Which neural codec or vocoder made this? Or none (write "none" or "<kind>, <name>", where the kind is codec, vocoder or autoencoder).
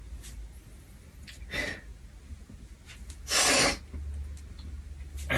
none